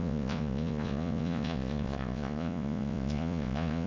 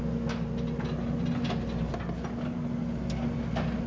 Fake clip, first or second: first